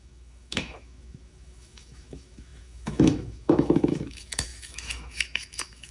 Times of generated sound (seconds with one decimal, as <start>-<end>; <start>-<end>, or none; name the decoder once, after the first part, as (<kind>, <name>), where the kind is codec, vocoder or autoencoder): 0.0-5.9 (autoencoder, DAC-VAE)